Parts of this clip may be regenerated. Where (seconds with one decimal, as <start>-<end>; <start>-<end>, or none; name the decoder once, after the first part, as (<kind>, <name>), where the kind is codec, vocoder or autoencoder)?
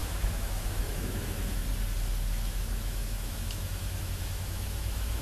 0.0-1.6 (autoencoder, DAC-VAE); 2.3-5.2